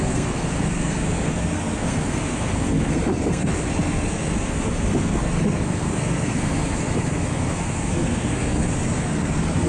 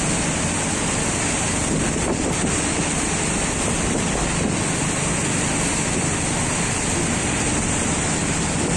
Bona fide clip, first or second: second